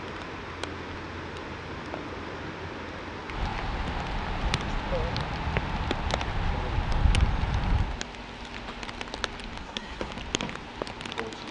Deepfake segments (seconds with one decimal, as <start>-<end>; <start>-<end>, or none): 9.6-10.1